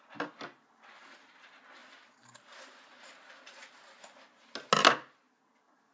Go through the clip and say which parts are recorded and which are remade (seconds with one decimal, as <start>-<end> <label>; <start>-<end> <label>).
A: 0.0-5.9 recorded